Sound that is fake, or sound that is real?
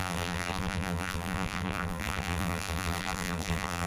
fake